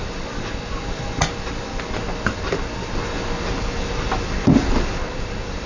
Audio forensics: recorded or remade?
recorded